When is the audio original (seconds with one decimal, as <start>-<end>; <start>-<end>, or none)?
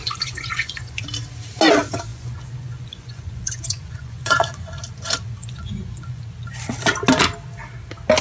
1.0-2.1; 4.8-5.4; 6.2-8.2